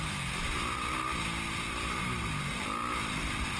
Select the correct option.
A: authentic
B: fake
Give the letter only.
A